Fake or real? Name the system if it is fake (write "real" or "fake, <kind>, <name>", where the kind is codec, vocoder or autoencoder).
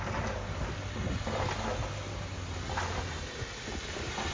real